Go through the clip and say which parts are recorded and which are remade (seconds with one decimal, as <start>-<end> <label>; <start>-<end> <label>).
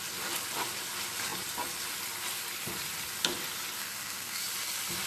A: 0.0-3.8 recorded; 3.8-4.4 remade; 4.4-5.1 recorded